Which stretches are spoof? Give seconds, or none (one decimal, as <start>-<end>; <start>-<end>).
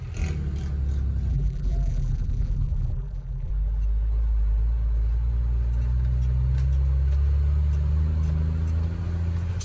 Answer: 1.3-3.5